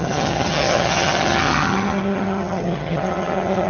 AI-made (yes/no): yes